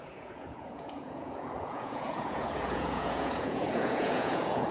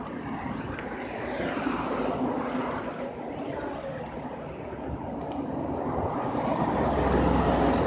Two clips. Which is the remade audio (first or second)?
first